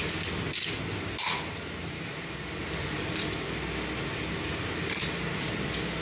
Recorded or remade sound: recorded